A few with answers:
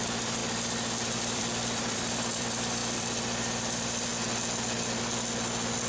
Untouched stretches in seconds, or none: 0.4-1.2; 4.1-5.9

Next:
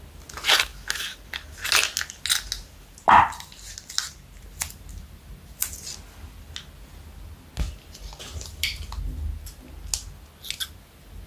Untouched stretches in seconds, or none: 0.0-11.3

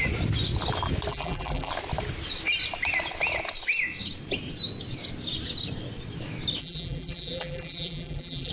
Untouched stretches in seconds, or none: 0.0-1.1; 1.7-6.6

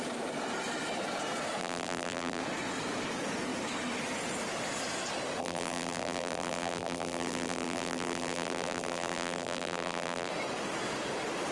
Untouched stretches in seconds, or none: 0.0-1.6; 2.4-5.4; 10.3-11.5

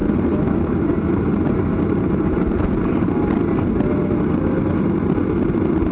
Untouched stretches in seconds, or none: 3.1-5.9